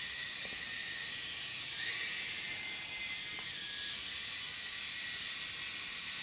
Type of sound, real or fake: real